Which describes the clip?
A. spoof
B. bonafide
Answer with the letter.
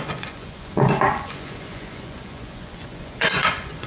A